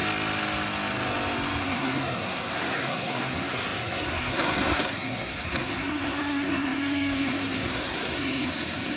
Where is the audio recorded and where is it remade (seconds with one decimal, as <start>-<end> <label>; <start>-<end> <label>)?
0.0-1.6 recorded; 1.6-9.0 remade